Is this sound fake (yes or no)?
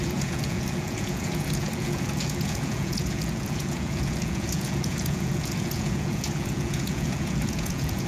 yes